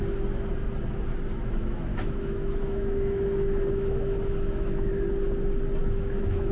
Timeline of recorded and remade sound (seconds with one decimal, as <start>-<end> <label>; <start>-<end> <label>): 0.0-1.9 recorded; 1.9-4.9 remade; 4.9-5.8 recorded; 5.8-6.5 remade